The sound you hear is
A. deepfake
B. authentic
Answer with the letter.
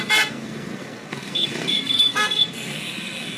A